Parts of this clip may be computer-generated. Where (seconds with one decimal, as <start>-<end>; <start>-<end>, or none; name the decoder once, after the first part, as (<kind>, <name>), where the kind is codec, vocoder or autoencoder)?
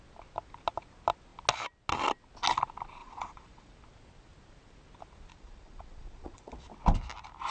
3.0-3.7 (vocoder, Vocos); 5.3-6.5